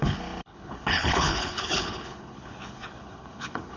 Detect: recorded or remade remade